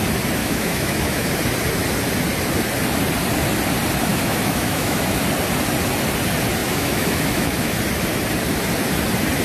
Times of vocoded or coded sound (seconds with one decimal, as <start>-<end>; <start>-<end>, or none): 0.4-1.3; 4.1-5.2; 6.6-7.8